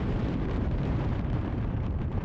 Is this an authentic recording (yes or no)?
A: no